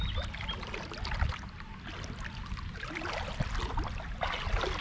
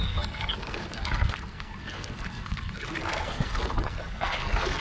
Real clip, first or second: first